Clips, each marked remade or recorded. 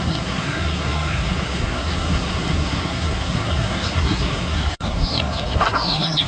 remade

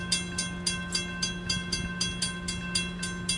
recorded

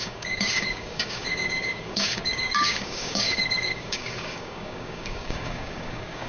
remade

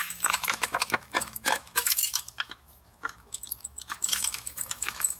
remade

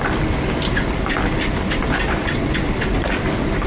recorded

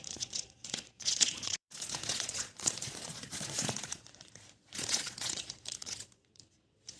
remade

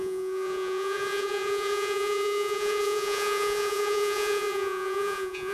remade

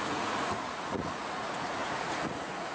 remade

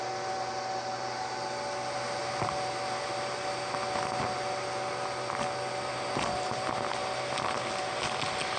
recorded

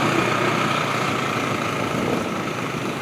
remade